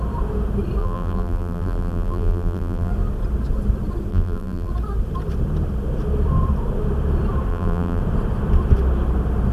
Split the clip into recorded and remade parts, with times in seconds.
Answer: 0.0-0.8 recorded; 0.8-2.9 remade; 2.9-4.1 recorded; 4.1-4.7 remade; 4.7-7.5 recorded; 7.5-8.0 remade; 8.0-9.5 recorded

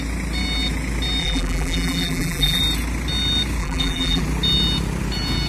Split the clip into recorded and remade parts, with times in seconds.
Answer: 0.0-1.2 recorded; 1.2-2.6 remade; 2.6-3.6 recorded; 3.6-4.2 remade; 4.2-5.5 recorded

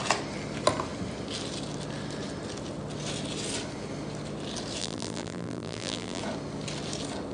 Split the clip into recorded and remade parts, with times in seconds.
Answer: 0.0-4.8 recorded; 4.8-6.2 remade; 6.2-7.3 recorded

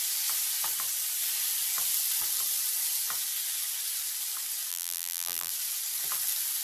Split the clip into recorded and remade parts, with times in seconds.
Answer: 0.0-4.7 recorded; 4.7-5.5 remade; 5.5-6.6 recorded